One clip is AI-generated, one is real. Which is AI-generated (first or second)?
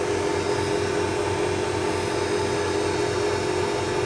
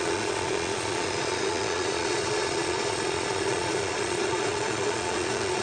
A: second